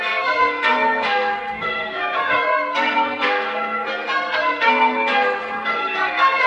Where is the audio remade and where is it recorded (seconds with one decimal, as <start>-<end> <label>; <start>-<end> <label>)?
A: 0.0-6.5 remade